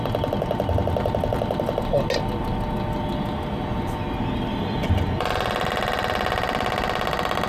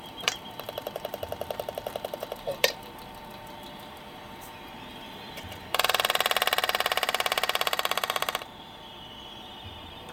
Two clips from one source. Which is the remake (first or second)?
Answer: second